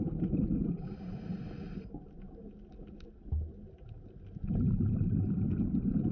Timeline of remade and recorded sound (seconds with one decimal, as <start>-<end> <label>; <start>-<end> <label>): 0.0-6.1 recorded